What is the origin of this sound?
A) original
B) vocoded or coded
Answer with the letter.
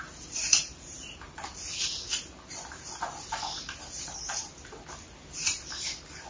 A